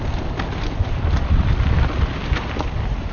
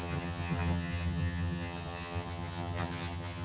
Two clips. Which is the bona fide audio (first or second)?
first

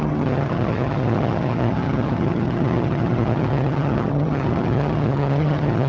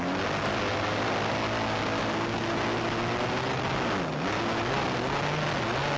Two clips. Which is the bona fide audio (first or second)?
second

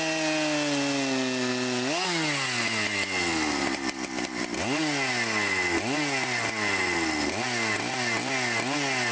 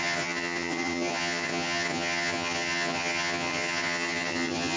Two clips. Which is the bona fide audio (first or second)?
first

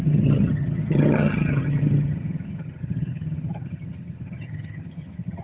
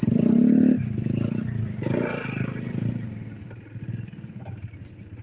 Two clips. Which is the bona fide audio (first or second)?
second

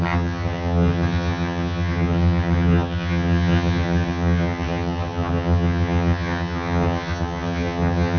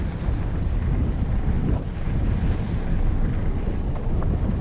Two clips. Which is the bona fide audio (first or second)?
second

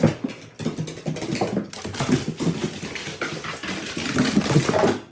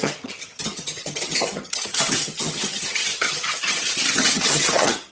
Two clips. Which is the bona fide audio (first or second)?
first